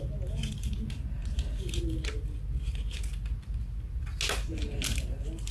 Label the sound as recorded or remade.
recorded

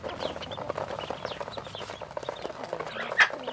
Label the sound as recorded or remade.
recorded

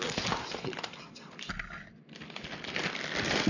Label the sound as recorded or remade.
recorded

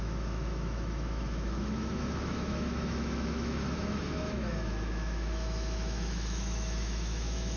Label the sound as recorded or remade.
remade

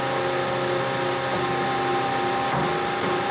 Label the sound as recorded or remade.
recorded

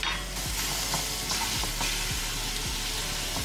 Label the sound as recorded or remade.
recorded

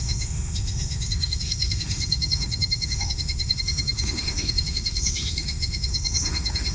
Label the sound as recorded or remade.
remade